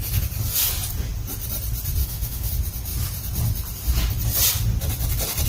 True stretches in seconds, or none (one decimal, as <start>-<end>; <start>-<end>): 0.0-2.0; 2.5-5.5